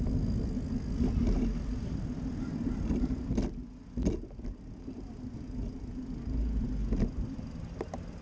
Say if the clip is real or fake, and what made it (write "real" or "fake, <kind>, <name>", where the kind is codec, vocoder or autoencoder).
real